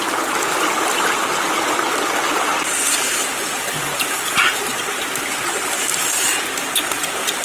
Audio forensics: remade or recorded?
recorded